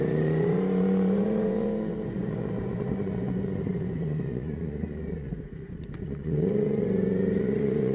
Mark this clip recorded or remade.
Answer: remade